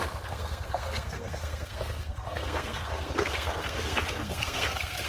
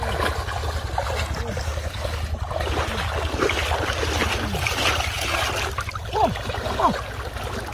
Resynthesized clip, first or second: first